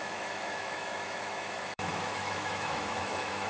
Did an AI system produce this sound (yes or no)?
yes